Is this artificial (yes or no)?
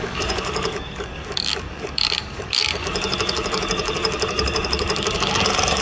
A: yes